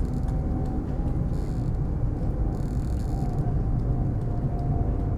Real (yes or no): yes